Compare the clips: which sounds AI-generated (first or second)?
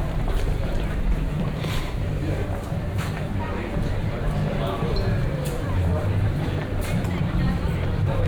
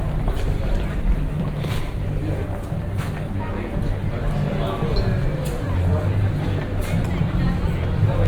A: first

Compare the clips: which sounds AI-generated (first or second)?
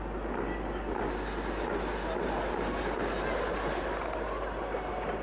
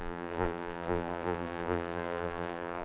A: second